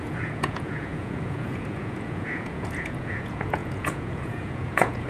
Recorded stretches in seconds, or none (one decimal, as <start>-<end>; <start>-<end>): none